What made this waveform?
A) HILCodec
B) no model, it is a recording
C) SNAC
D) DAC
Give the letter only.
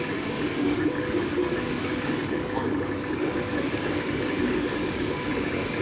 D